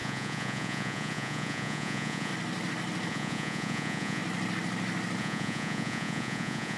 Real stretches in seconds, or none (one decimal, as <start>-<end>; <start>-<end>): 2.3-3.1; 4.2-5.2